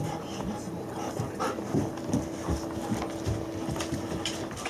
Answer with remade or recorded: recorded